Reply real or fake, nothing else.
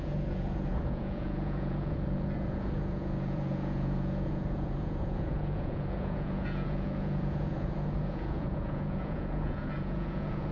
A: fake